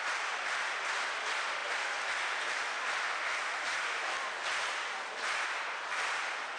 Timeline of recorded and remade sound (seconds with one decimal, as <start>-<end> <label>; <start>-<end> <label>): 0.0-6.6 recorded